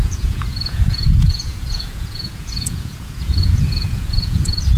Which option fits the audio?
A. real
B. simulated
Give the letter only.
B